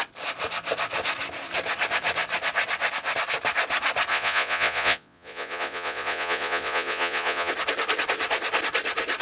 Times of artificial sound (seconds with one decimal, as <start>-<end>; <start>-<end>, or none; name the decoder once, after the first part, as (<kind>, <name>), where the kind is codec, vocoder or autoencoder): 4.1-7.5 (vocoder, Vocos)